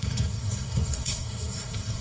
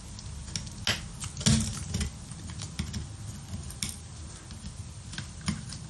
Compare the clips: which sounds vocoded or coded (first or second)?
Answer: first